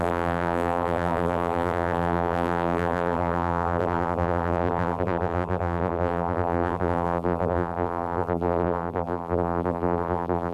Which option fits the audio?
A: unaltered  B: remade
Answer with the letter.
B